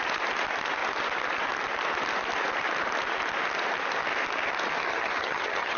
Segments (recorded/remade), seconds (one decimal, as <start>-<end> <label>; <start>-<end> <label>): 0.0-4.9 recorded; 4.9-5.8 remade